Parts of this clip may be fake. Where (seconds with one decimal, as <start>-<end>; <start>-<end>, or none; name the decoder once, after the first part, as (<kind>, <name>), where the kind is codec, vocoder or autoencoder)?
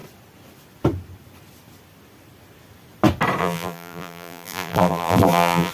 3.4-5.7 (vocoder, BigVGAN v2)